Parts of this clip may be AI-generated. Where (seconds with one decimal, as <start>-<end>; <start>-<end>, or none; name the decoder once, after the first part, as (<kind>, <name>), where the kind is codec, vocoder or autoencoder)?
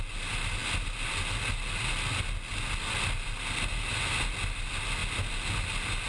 none